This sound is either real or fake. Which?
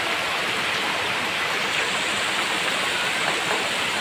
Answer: fake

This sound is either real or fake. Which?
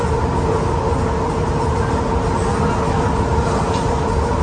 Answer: real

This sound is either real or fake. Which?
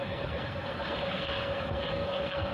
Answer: fake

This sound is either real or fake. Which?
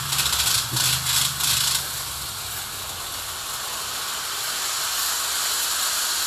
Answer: real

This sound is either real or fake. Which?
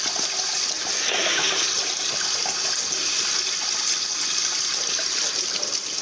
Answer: real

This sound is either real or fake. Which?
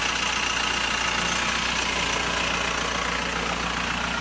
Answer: real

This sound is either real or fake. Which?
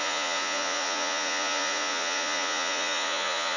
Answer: fake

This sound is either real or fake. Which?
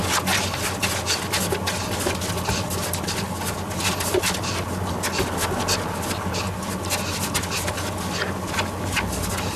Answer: real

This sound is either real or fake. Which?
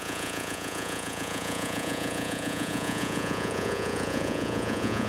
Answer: fake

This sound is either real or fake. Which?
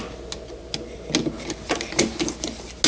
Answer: real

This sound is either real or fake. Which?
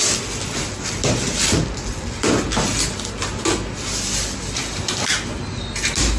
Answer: real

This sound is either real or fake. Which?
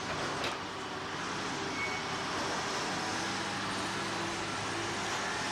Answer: real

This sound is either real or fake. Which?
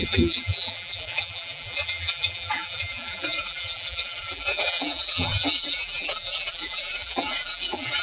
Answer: fake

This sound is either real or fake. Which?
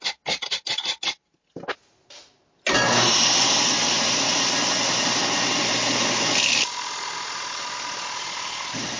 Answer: real